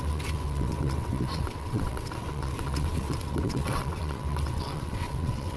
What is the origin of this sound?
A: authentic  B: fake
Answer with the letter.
B